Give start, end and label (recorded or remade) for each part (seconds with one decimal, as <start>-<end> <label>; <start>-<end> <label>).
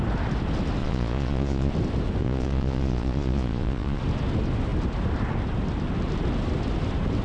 0.0-0.8 recorded; 0.8-1.7 remade; 1.7-2.2 recorded; 2.2-4.0 remade; 4.0-7.2 recorded